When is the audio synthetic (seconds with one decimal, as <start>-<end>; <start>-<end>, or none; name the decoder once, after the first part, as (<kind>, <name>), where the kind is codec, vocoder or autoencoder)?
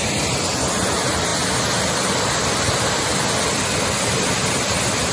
none